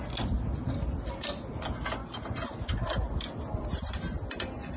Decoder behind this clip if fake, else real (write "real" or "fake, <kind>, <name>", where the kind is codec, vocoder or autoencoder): real